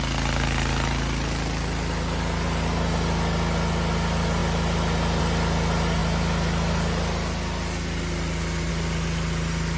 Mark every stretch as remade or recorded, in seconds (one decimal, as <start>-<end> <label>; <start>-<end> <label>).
0.0-9.8 recorded